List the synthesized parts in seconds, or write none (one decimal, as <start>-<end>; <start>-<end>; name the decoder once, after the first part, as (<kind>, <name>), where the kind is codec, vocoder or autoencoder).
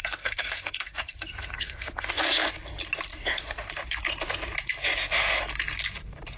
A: 0.0-2.1 (codec, SNAC); 3.1-3.7